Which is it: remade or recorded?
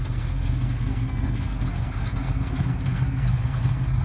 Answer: remade